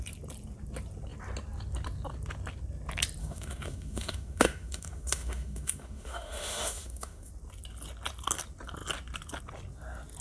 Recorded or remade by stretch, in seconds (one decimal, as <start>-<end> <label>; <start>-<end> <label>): 0.0-3.2 recorded; 3.2-7.3 remade; 7.3-10.2 recorded